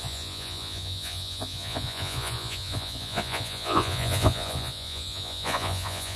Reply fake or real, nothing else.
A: fake